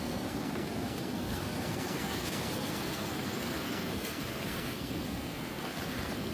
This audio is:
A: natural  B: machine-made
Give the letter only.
B